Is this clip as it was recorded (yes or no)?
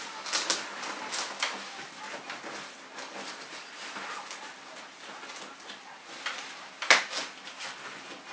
yes